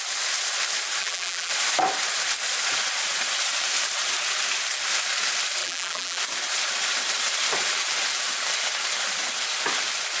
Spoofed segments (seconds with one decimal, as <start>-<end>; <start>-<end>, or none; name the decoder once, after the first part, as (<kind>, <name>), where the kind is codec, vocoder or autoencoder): 1.0-1.5 (vocoder, BigVGAN v2); 5.6-6.2